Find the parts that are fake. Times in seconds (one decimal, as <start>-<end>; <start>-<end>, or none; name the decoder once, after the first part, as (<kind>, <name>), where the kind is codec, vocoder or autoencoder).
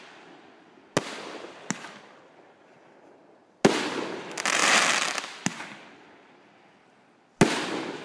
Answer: none